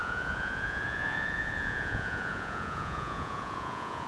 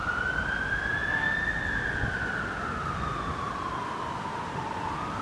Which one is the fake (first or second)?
first